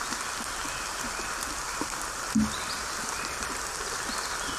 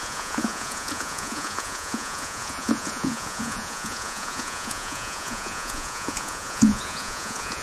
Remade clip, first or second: second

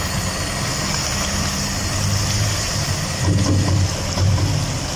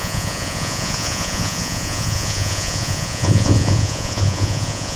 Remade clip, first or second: second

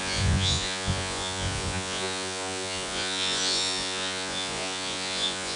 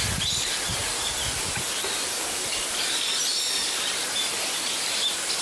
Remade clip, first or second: first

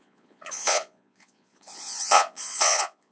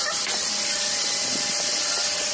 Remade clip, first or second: first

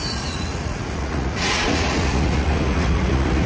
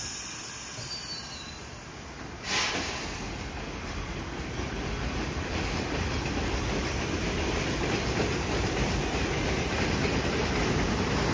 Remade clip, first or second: first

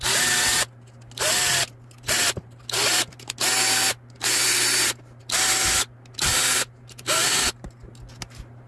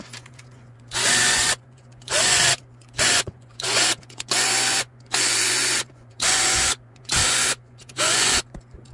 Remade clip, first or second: second